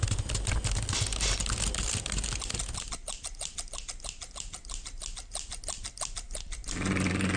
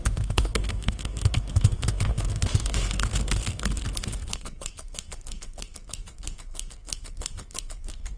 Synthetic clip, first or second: second